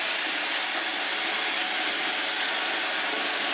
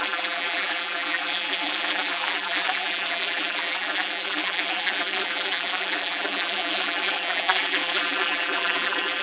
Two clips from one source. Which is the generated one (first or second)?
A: second